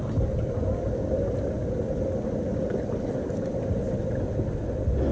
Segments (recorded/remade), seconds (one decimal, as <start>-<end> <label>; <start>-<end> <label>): 0.0-5.1 recorded